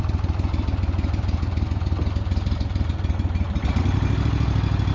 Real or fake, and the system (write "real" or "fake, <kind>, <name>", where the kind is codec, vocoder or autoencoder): real